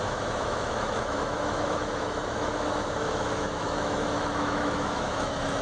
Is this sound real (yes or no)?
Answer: no